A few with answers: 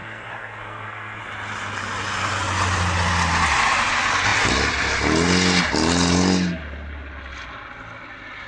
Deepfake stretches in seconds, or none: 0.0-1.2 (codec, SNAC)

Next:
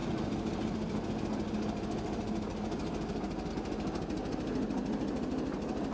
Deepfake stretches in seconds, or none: none